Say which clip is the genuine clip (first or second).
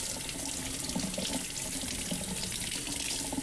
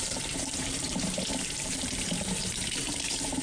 first